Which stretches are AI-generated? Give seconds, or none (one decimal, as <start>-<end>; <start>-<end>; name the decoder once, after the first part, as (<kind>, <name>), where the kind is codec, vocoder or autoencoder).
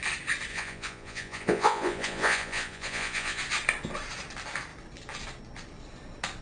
0.5-3.4 (vocoder, Vocos)